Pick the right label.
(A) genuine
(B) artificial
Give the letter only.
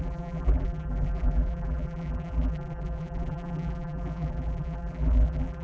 B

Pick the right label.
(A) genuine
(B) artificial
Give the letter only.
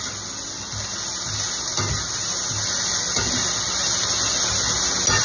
A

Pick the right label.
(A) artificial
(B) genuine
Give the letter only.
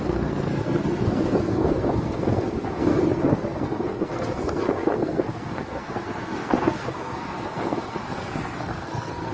A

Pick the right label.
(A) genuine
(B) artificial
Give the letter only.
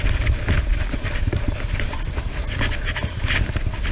A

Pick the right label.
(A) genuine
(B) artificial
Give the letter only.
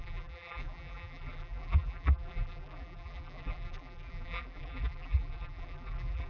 B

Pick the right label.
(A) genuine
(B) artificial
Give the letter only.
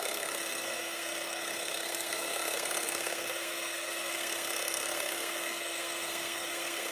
B